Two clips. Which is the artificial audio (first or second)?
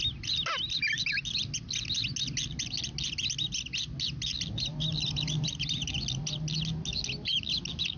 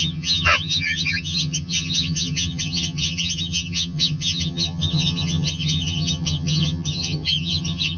second